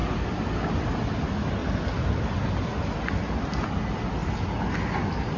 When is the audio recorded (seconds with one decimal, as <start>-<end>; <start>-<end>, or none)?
0.0-5.4